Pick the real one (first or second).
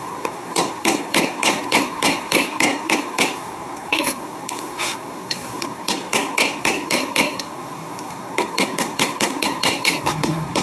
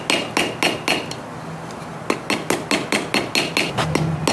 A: second